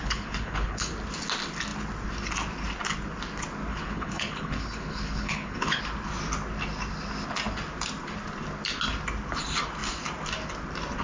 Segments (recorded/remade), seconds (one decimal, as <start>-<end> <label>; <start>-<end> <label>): 0.0-0.9 remade; 0.9-3.7 recorded; 3.7-5.8 remade; 5.8-11.0 recorded